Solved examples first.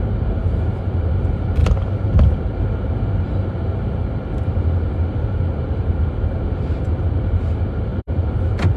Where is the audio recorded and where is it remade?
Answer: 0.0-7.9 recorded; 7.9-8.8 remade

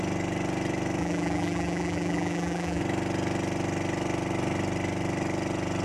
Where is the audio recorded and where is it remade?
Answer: 0.0-1.0 recorded; 1.0-2.8 remade; 2.8-5.8 recorded

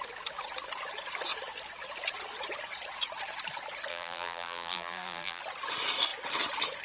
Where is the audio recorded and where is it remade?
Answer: 0.0-3.9 recorded; 3.9-5.4 remade; 5.4-6.8 recorded

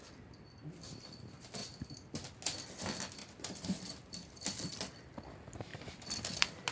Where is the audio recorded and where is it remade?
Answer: 0.0-1.6 remade; 1.6-2.8 recorded; 2.8-4.2 remade; 4.2-5.0 recorded; 5.0-5.7 remade; 5.7-6.7 recorded